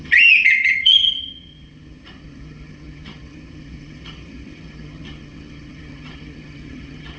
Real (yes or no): no